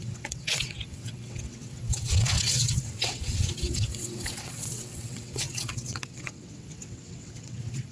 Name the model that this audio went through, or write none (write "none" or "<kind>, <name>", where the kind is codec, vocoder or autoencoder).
vocoder, WaveNeXt